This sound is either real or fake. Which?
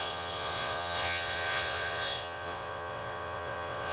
fake